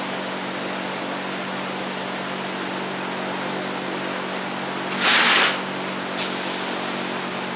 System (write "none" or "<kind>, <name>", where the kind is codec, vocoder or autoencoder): none